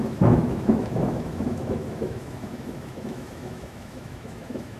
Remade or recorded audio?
remade